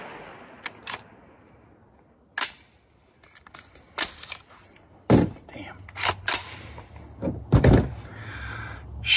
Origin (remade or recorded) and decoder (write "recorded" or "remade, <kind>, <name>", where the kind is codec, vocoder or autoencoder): recorded